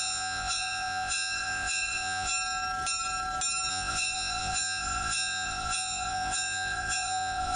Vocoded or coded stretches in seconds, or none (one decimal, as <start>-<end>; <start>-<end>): 0.0-2.3; 3.7-7.6